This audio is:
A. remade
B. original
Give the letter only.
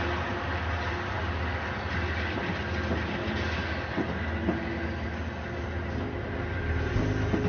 B